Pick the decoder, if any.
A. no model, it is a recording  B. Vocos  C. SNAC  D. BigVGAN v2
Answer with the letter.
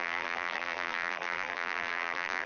D